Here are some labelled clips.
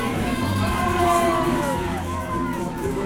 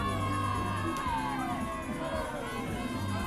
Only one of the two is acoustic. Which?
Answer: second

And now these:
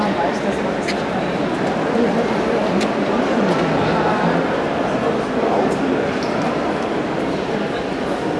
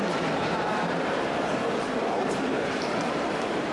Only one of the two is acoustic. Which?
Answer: first